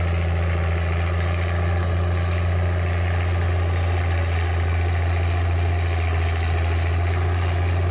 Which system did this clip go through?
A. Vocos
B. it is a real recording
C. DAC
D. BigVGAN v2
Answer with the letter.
B